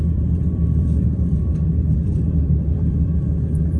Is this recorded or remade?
remade